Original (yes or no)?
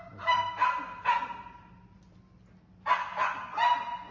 yes